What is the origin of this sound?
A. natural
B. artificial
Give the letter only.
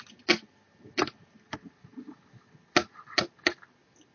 A